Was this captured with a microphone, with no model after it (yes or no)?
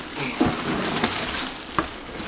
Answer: yes